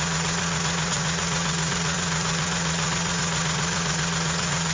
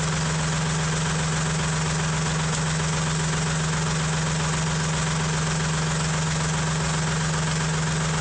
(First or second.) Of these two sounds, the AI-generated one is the first